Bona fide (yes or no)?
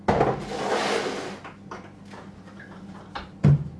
yes